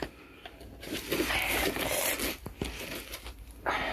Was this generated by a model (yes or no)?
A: no